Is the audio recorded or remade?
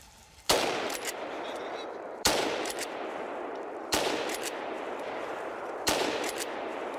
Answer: remade